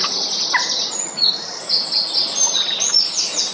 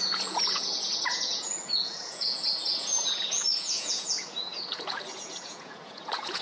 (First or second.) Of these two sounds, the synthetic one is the second